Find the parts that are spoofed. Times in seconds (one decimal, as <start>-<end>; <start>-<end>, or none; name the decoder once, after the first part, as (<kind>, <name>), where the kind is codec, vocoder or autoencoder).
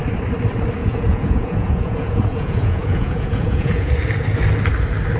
0.8-3.9 (vocoder, Vocos)